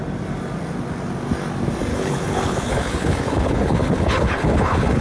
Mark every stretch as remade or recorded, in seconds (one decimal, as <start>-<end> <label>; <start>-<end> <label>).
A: 0.0-1.9 recorded; 1.9-5.0 remade